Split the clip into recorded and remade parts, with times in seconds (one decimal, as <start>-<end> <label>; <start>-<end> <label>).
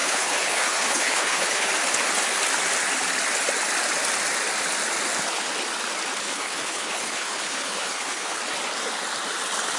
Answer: 0.0-1.7 remade; 1.7-6.2 recorded; 6.2-8.4 remade; 8.4-9.8 recorded